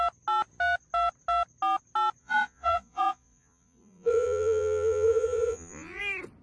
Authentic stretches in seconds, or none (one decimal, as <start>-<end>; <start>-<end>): 0.0-2.2; 6.0-6.4